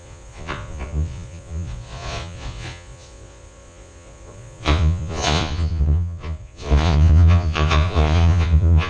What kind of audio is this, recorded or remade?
remade